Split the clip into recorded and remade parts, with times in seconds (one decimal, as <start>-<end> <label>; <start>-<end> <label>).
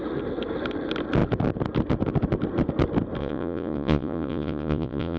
0.0-3.2 recorded; 3.2-5.2 remade